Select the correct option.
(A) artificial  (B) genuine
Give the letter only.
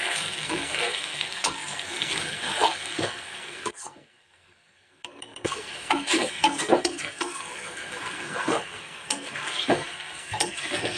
A